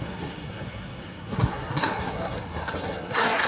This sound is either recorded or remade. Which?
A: remade